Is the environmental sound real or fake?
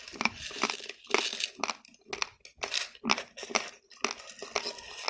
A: real